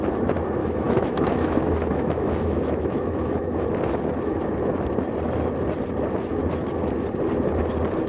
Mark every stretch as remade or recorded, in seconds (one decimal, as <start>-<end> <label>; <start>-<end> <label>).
0.0-0.6 recorded; 0.6-3.6 remade; 3.6-8.1 recorded